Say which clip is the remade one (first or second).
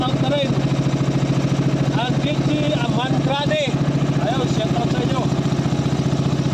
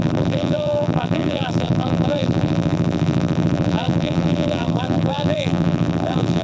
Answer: second